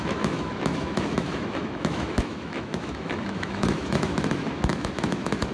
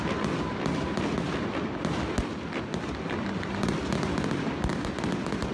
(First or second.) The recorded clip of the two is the second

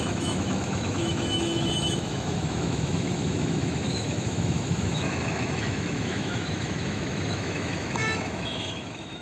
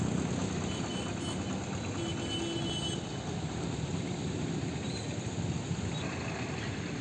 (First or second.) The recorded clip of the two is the second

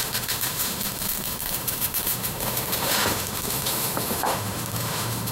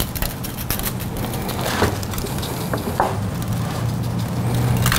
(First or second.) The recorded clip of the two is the second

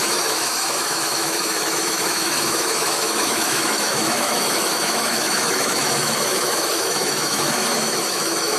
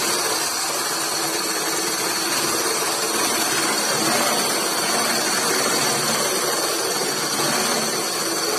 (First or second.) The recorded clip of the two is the second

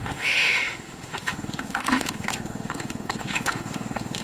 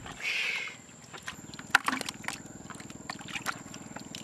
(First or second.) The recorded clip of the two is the second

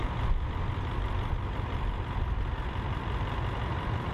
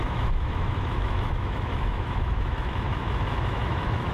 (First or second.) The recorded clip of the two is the first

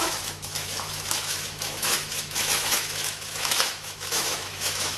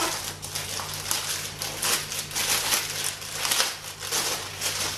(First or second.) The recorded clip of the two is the second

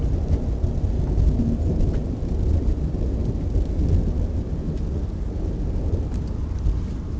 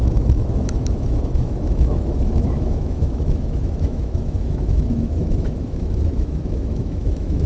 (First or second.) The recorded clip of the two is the first